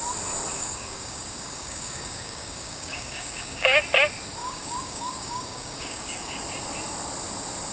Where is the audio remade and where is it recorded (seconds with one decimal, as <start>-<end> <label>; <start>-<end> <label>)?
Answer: 0.0-0.5 recorded; 0.5-3.8 remade; 3.8-4.4 recorded; 4.4-6.4 remade; 6.4-7.7 recorded